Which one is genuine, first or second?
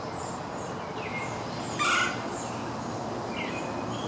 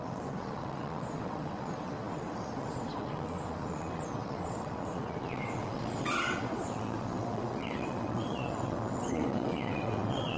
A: first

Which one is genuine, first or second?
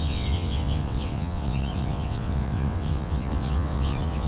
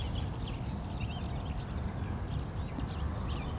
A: second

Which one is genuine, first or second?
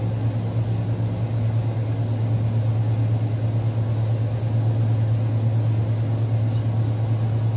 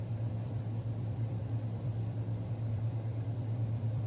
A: first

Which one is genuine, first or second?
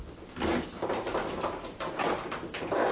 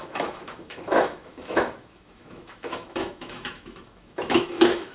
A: first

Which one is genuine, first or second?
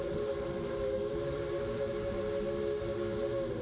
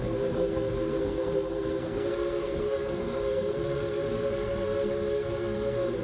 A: first